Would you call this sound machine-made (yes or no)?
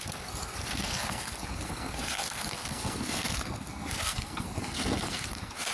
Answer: yes